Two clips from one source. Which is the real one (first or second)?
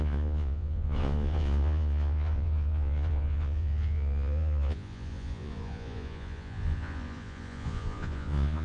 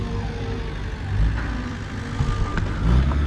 second